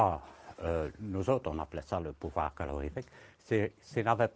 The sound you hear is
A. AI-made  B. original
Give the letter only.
B